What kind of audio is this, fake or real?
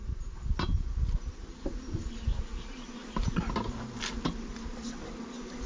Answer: real